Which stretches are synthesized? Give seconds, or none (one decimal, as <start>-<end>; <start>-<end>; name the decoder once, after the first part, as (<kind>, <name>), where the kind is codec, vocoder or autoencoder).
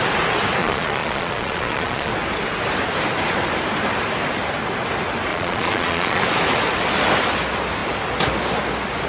0.6-2.1 (vocoder, Vocos); 5.3-6.2